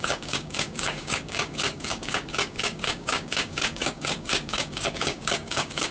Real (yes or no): no